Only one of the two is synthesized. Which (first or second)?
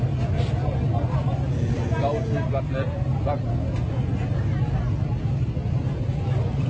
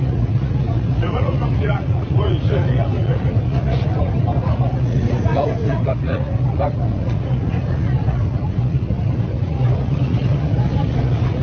second